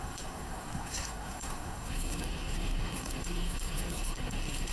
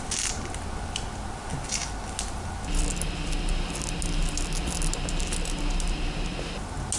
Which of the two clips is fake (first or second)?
first